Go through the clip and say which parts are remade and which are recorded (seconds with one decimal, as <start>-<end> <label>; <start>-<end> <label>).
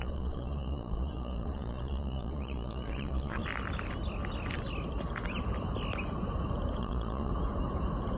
0.0-3.4 remade; 3.4-6.8 recorded; 6.8-7.3 remade; 7.3-8.2 recorded